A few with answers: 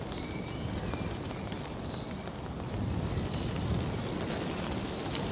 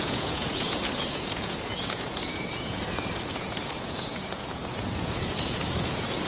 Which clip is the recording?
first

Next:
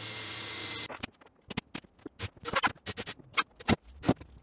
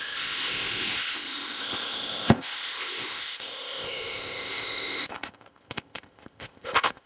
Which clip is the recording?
first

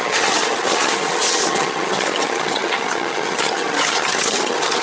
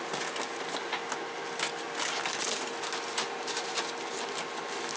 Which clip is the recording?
second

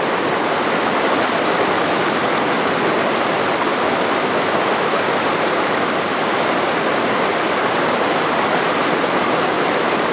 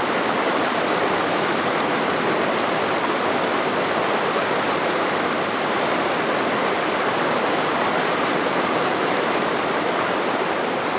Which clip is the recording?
first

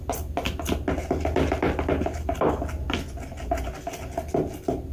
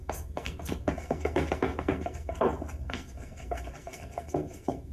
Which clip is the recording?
first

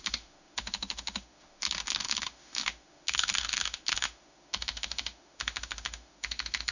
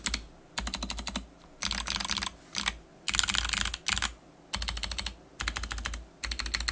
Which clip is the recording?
second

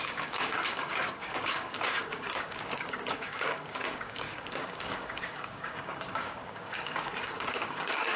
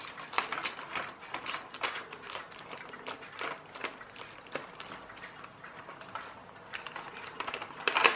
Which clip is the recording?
second